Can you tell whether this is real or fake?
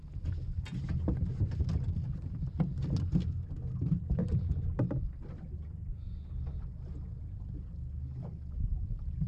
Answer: real